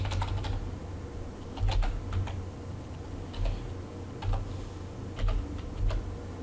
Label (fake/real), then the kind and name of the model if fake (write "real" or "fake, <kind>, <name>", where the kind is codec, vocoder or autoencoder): real